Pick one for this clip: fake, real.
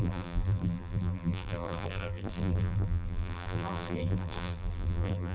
fake